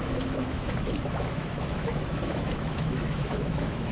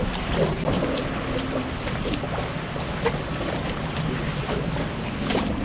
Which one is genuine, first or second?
second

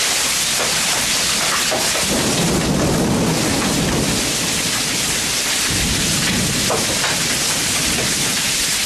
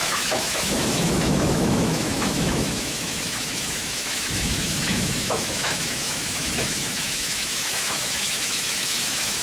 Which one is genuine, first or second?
first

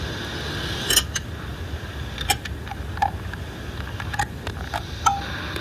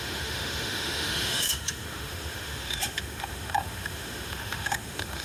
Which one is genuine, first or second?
first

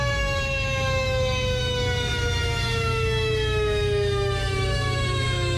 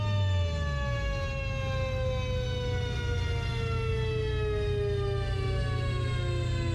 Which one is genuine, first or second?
second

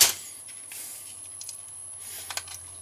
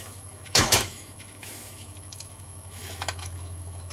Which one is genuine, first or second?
first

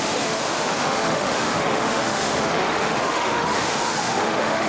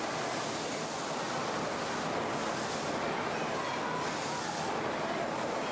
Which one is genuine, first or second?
second